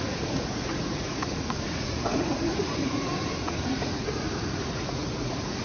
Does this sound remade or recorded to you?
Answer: remade